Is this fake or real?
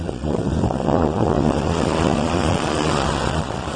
fake